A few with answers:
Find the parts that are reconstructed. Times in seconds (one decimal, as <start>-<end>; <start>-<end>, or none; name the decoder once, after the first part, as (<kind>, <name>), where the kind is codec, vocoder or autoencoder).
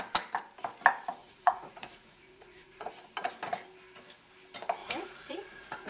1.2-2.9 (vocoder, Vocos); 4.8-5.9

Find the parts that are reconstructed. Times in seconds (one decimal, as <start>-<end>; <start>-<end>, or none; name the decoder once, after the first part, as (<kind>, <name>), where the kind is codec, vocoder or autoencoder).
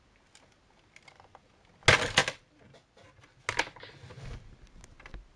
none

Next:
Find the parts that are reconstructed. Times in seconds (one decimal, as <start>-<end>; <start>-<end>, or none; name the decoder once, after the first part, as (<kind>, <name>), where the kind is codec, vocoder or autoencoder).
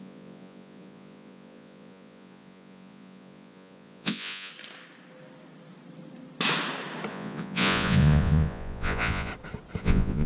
0.0-4.5 (vocoder, Vocos); 7.1-9.3; 9.8-10.3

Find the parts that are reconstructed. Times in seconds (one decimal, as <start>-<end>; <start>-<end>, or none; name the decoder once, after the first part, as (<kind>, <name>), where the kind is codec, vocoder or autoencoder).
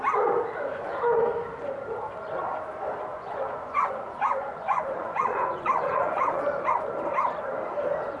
0.7-1.2 (vocoder, Vocos); 3.1-6.4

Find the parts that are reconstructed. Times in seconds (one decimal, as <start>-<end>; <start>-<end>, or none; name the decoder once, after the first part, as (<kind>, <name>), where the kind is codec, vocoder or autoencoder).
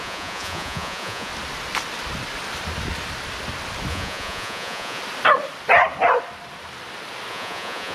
0.0-1.3 (vocoder, Vocos); 3.9-5.0; 7.3-7.9